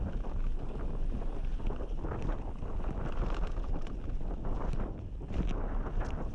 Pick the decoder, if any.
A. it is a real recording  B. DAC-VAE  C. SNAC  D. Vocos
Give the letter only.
A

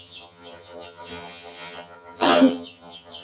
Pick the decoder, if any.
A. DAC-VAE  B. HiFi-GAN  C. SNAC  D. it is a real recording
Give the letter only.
B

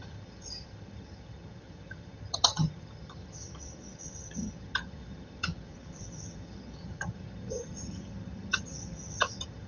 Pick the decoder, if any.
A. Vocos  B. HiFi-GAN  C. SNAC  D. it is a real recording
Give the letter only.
B